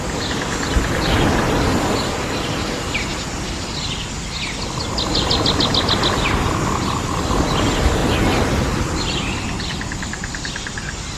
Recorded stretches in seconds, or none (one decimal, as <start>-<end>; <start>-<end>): 0.0-11.2